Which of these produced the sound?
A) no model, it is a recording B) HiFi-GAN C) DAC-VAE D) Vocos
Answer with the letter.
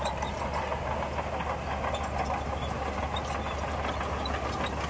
A